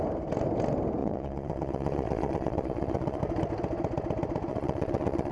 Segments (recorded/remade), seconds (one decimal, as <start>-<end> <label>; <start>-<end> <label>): 0.0-1.0 recorded; 1.0-3.2 remade; 3.2-4.5 recorded; 4.5-5.3 remade